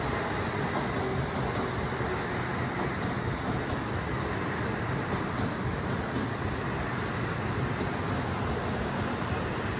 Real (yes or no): yes